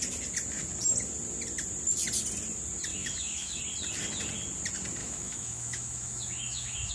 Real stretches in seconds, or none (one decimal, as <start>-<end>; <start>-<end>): 0.0-2.9; 3.6-5.0